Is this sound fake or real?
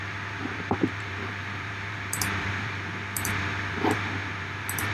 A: fake